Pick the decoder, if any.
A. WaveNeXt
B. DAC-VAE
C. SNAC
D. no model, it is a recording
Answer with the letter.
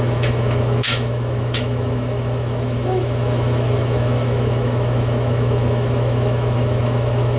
B